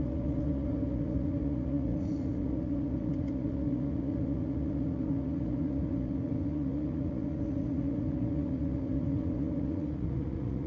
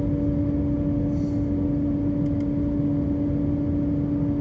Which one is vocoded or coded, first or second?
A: first